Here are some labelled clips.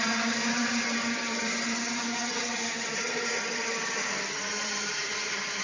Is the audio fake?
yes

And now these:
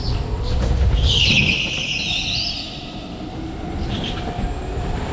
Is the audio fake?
no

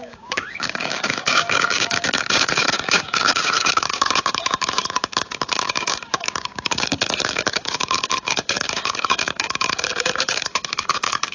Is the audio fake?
yes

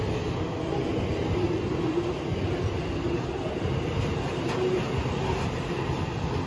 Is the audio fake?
no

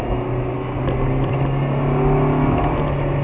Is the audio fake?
no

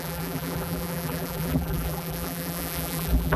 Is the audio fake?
yes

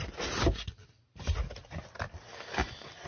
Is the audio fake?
no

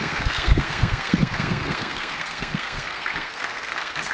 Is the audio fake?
yes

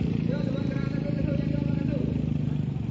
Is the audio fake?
yes